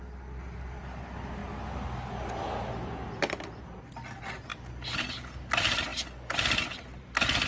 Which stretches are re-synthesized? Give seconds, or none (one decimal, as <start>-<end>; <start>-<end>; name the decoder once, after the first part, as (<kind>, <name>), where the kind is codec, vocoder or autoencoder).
none